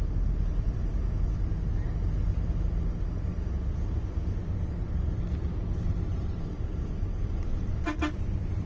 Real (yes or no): yes